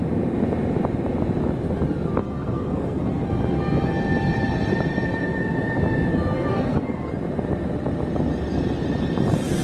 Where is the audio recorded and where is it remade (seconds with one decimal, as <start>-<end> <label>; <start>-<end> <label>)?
0.0-2.2 recorded; 2.2-3.3 remade; 3.3-6.5 recorded; 6.5-7.1 remade; 7.1-9.6 recorded